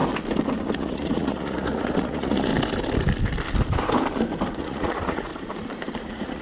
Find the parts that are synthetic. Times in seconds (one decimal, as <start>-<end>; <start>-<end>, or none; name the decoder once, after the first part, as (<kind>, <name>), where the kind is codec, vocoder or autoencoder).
0.7-2.5 (vocoder, Vocos); 4.6-5.3; 6.0-6.4